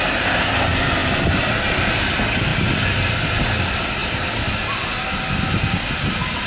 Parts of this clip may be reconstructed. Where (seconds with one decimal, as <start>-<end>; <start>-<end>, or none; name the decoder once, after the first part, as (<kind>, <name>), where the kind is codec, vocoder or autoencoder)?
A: 1.0-1.7 (vocoder, BigVGAN v2)